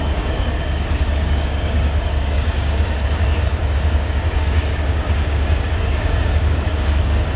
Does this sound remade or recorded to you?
remade